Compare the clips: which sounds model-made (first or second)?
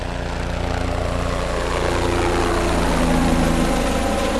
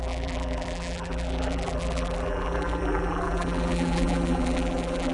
second